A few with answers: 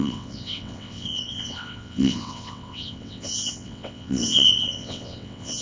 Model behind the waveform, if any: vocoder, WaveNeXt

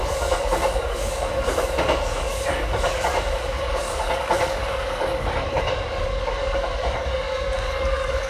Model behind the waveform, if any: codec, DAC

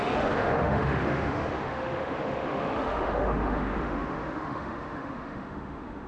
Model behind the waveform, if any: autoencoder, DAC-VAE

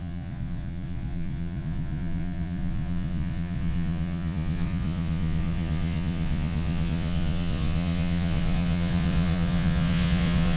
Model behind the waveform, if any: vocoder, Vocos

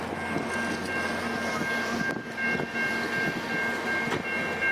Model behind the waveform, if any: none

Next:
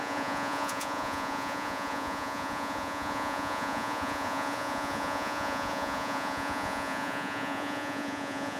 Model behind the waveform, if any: vocoder, Vocos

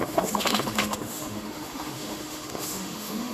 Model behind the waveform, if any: autoencoder, DAC-VAE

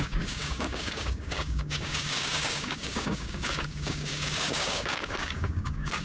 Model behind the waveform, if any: codec, DAC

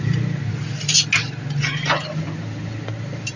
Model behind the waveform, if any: none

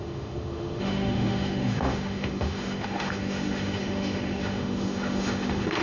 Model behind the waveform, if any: autoencoder, DAC-VAE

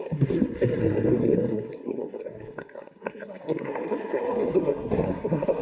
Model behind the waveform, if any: codec, SNAC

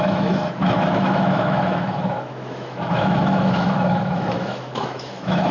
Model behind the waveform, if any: autoencoder, DAC-VAE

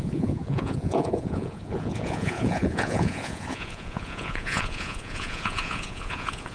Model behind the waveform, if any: vocoder, Vocos